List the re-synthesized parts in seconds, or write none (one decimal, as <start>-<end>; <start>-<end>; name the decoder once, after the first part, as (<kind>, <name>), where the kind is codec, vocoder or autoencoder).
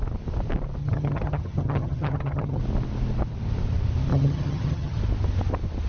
0.8-2.6 (vocoder, HiFi-GAN); 4.1-5.0